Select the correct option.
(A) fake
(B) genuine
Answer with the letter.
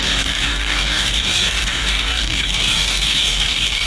A